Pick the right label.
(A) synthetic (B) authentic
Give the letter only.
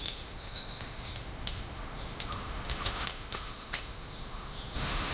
A